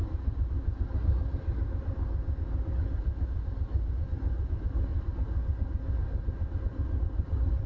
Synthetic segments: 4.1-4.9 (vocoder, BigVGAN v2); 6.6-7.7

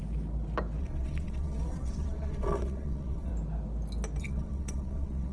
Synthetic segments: 0.8-3.3 (vocoder, WaveNeXt); 4.2-5.3

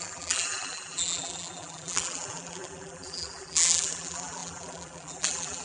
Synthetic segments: 0.0-5.6 (vocoder, BigVGAN v2)